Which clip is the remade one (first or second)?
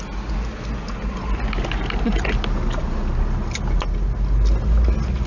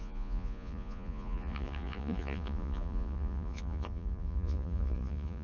second